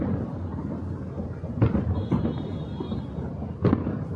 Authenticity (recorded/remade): recorded